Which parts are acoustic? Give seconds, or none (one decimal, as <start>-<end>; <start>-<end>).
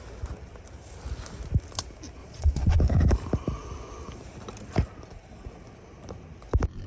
0.0-2.2; 2.8-6.9